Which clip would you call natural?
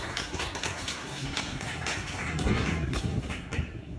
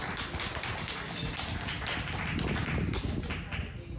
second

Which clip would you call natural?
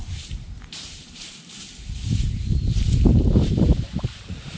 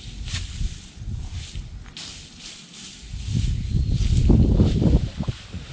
second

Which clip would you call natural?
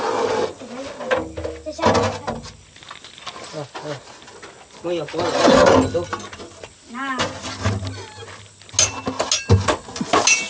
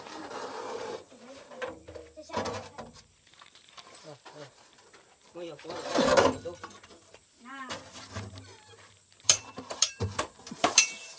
first